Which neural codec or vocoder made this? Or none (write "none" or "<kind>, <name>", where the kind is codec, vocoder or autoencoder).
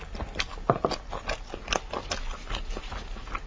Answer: none